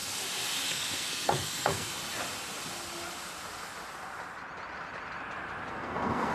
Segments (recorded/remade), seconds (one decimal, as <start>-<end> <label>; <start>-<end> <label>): 0.0-0.7 recorded; 0.7-1.9 remade; 1.9-5.7 recorded; 5.7-6.3 remade